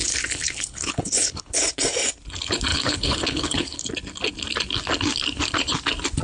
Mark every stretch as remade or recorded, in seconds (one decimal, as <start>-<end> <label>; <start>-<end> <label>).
0.0-1.6 remade; 1.6-2.7 recorded; 2.7-3.9 remade; 3.9-6.2 recorded